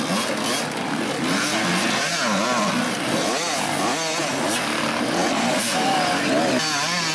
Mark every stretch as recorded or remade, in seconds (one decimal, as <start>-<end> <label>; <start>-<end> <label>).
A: 0.0-7.1 recorded